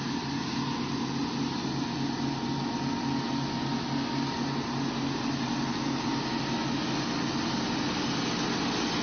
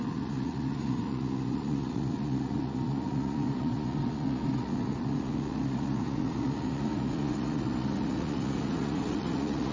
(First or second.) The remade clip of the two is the second